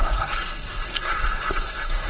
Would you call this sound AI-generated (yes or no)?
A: yes